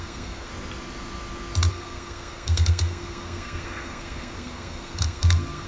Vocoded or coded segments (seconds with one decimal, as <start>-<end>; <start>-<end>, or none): 0.0-0.5; 1.7-5.7